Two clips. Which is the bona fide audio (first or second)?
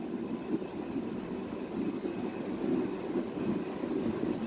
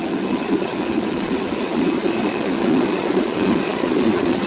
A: first